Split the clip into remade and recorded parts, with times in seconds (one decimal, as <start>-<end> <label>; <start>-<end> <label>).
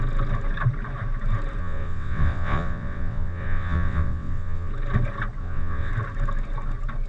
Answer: 0.0-1.6 recorded; 1.6-4.7 remade; 4.7-5.4 recorded; 5.4-5.9 remade; 5.9-7.1 recorded